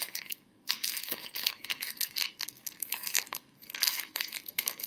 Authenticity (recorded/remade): remade